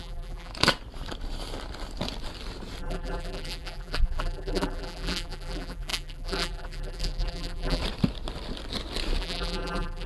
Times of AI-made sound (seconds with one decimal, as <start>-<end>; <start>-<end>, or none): 0.0-0.5; 2.8-7.8; 9.2-10.1